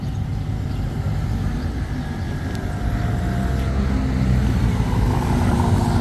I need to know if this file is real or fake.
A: real